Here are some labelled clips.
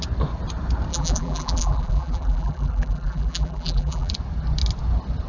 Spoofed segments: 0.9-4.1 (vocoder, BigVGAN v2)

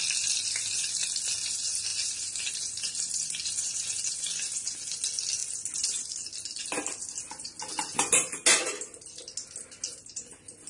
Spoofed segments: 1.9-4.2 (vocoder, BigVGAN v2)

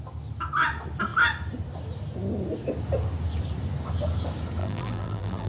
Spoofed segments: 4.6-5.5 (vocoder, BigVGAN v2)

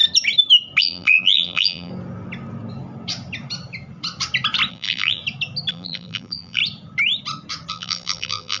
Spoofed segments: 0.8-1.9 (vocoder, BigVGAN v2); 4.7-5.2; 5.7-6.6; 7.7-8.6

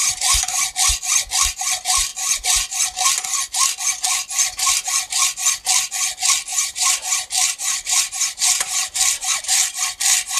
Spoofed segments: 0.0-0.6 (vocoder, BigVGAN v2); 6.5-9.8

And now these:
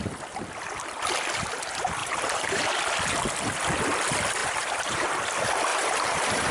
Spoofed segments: 2.0-2.6 (vocoder, BigVGAN v2); 4.4-5.1; 5.7-6.5